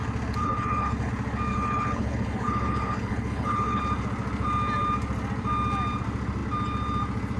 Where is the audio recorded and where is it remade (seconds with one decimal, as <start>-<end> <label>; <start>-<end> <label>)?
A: 0.0-0.4 recorded; 0.4-1.1 remade; 1.1-1.5 recorded; 1.5-3.8 remade; 3.8-7.4 recorded